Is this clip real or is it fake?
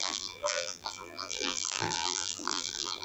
fake